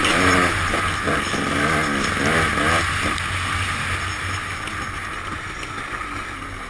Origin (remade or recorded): recorded